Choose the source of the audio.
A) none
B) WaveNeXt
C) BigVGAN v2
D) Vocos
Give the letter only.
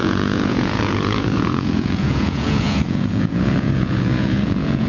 D